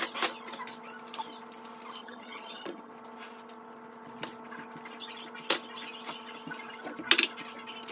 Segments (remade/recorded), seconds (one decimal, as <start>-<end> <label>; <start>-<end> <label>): 0.0-2.0 recorded; 2.0-2.9 remade; 2.9-7.9 recorded